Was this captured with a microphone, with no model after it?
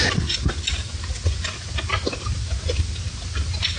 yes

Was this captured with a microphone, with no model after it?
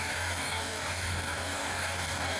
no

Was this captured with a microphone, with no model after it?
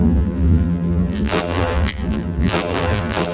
no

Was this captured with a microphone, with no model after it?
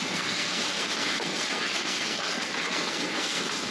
no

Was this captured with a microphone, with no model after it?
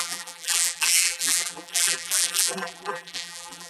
no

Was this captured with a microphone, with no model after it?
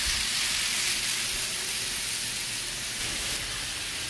yes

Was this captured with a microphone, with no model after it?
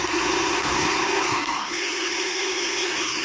no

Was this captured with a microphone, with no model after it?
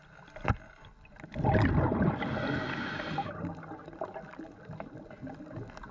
yes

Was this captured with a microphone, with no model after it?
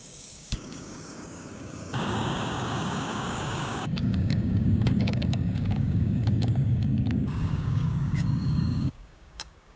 no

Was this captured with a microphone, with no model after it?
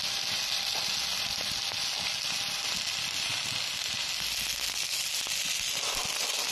yes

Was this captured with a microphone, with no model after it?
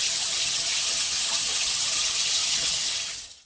no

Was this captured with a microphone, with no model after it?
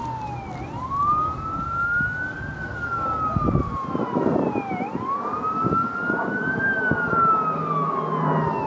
yes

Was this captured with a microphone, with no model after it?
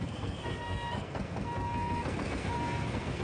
no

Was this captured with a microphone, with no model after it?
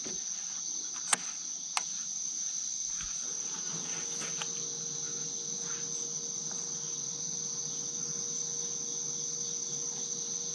yes